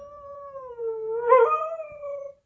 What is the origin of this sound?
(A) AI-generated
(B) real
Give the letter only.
A